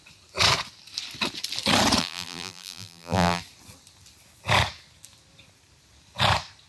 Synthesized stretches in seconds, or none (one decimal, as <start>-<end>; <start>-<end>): 2.0-3.4